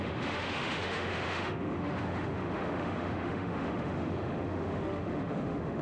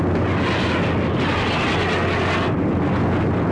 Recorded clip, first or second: second